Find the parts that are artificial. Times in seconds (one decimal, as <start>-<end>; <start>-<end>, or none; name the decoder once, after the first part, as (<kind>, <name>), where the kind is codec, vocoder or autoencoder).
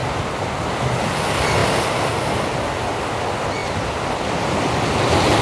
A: none